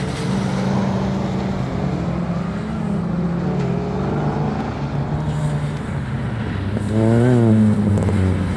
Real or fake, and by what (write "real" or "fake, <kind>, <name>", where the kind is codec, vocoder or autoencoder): real